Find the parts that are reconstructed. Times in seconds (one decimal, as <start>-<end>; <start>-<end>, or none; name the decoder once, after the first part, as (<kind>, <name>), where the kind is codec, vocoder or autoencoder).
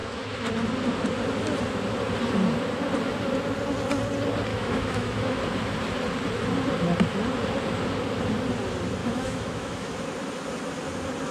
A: 0.0-0.5 (autoencoder, DAC-VAE); 4.5-5.4; 9.0-10.0